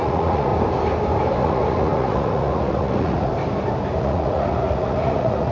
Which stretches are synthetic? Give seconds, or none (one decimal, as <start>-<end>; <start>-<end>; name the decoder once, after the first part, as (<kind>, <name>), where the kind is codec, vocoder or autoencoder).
0.0-0.5 (vocoder, Vocos); 1.4-3.3; 4.0-5.5